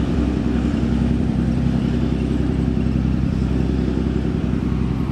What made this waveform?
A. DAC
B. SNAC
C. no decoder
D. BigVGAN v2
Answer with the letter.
D